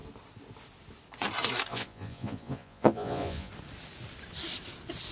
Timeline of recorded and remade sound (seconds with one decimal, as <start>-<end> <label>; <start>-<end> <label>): 0.0-1.7 recorded; 1.7-3.5 remade; 3.5-5.1 recorded